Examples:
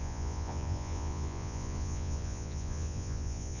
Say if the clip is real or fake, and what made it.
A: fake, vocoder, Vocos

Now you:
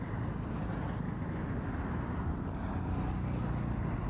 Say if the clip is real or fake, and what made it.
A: real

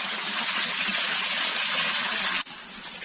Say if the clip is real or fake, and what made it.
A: fake, vocoder, Vocos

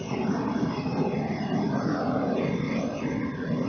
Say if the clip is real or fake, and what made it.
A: real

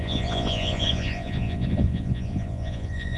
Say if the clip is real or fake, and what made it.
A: fake, vocoder, Vocos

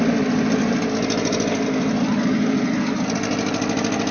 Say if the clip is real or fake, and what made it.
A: real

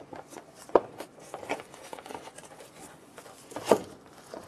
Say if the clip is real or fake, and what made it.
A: fake, vocoder, Vocos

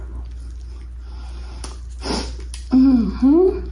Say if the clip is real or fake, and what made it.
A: real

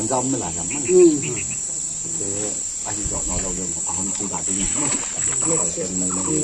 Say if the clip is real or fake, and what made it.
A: real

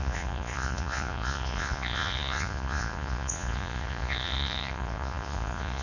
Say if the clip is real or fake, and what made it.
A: fake, vocoder, Vocos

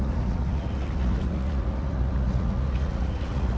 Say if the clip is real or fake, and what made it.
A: fake, vocoder, Vocos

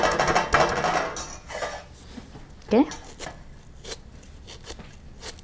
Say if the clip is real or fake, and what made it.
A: real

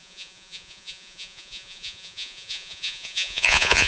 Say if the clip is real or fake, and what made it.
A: fake, vocoder, Vocos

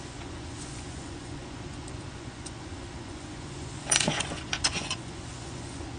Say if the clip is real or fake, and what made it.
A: fake, vocoder, Vocos